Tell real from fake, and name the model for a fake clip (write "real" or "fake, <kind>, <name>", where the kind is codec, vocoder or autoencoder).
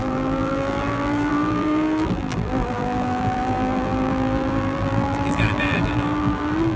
fake, vocoder, BigVGAN v2